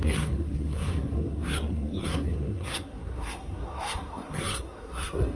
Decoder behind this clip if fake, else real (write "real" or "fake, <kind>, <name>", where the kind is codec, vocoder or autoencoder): fake, codec, SNAC